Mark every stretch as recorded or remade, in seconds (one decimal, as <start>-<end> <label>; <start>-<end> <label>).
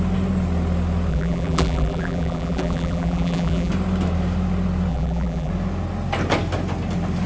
0.0-1.1 recorded; 1.1-3.7 remade; 3.7-4.9 recorded; 4.9-5.5 remade; 5.5-7.3 recorded